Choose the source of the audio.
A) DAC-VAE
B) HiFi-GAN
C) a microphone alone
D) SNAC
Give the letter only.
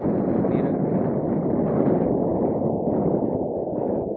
C